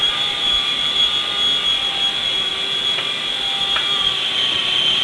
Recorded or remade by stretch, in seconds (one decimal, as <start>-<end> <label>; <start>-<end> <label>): 0.0-0.7 remade; 0.7-5.0 recorded